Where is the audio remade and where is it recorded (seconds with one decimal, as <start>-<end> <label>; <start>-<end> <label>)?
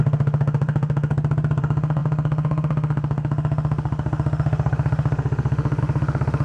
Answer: 0.0-1.1 remade; 1.1-1.6 recorded; 1.6-6.4 remade